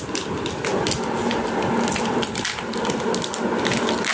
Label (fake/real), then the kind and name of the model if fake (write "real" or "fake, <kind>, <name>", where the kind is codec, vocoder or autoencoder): real